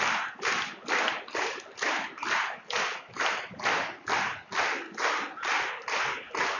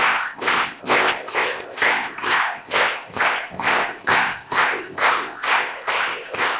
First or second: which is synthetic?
second